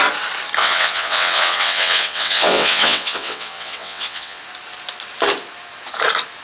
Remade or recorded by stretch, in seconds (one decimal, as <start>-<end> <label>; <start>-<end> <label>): 0.0-0.6 recorded; 0.6-4.4 remade; 4.4-6.4 recorded